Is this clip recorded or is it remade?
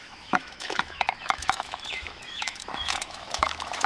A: remade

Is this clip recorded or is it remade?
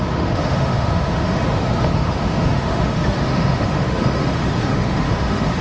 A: remade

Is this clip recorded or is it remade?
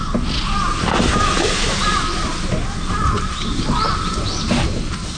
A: recorded